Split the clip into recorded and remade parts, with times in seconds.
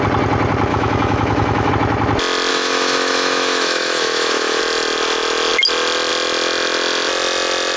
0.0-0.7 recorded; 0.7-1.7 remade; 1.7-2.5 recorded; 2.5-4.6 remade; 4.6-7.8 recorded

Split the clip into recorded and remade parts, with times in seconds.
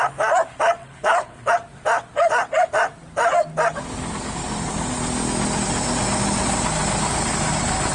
0.0-0.8 recorded; 0.8-1.5 remade; 1.5-7.9 recorded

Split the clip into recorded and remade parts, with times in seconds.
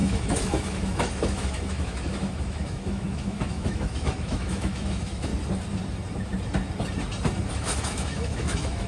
0.0-5.3 remade; 5.3-7.5 recorded; 7.5-8.9 remade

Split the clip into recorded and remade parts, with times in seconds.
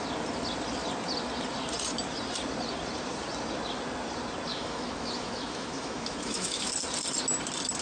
0.0-4.5 recorded; 4.5-6.7 remade; 6.7-7.8 recorded